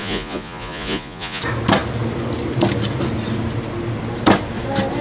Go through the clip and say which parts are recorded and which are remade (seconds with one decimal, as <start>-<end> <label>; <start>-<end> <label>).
0.0-1.4 remade; 1.4-5.0 recorded